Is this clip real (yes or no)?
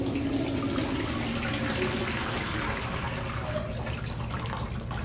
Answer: yes